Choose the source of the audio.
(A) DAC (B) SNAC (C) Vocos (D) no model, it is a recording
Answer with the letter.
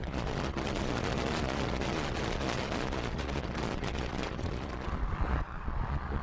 C